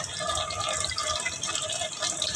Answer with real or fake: real